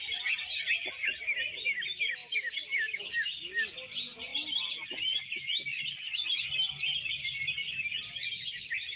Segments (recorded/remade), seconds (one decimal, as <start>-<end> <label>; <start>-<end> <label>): 0.0-9.0 recorded